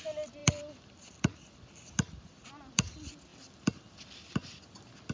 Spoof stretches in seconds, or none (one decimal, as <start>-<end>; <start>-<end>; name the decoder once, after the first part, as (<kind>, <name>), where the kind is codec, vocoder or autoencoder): none